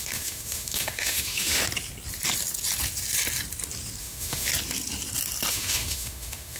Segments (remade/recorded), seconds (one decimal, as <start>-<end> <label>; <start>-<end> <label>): 0.0-1.6 remade; 1.6-4.0 recorded; 4.0-4.5 remade; 4.5-5.5 recorded; 5.5-6.6 remade